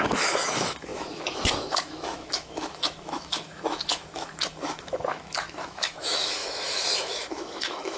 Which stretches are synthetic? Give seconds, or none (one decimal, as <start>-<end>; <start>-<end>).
0.0-8.0